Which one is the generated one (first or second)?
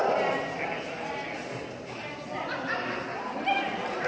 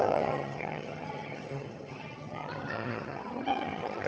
second